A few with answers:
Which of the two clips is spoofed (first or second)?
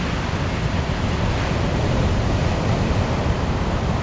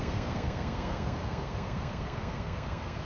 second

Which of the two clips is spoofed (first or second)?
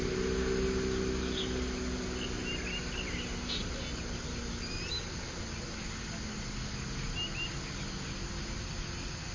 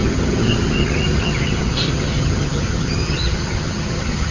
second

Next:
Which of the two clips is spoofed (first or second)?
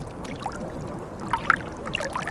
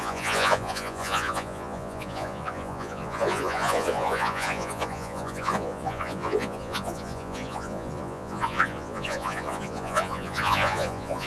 second